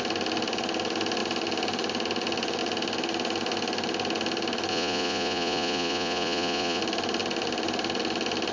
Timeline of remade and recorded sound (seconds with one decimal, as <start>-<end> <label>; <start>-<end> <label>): 0.0-4.7 recorded; 4.7-6.8 remade; 6.8-8.5 recorded